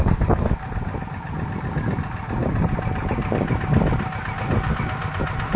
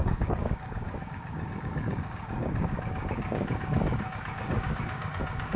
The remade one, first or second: second